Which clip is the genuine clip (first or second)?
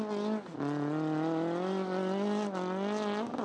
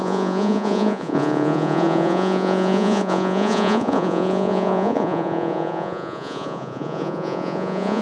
first